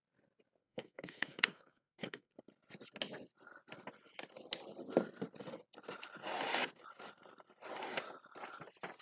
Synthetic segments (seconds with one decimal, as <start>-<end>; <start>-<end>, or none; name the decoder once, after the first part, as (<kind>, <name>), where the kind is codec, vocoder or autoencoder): 0.6-2.3 (codec, SNAC)